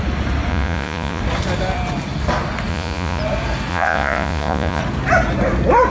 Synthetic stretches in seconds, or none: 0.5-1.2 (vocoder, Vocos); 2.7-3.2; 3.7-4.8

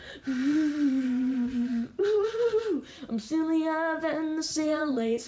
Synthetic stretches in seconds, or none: 0.0-2.6 (vocoder, Vocos); 4.5-5.3

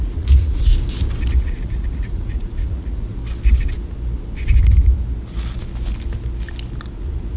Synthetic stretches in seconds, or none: 0.0-0.7 (vocoder, Vocos); 1.4-3.2; 7.0-7.4